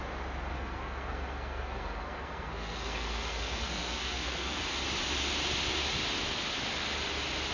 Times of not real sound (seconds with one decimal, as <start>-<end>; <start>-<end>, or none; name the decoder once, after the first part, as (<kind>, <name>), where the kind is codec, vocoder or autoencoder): 0.5-4.6 (codec, SNAC)